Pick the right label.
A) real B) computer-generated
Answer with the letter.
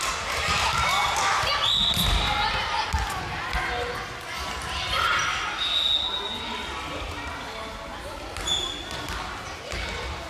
A